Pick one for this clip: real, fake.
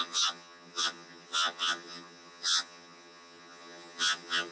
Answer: fake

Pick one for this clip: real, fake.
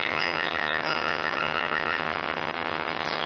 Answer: fake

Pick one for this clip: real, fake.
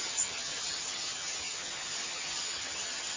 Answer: fake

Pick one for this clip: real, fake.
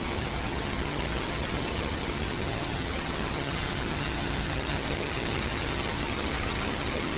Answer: fake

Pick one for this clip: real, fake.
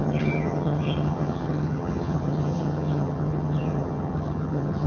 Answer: fake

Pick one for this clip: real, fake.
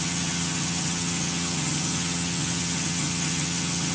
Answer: fake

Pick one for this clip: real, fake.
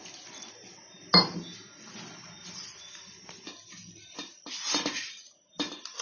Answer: real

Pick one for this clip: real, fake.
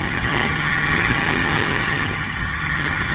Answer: fake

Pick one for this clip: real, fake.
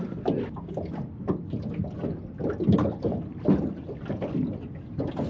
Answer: real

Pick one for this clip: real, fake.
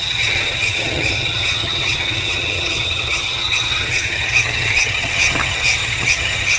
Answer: fake